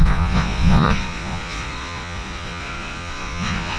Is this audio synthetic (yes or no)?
yes